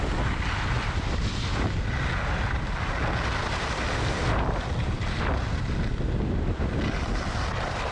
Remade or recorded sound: recorded